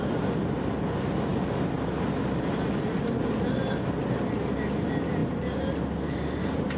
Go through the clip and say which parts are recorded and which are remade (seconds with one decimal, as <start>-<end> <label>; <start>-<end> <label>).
0.0-6.8 recorded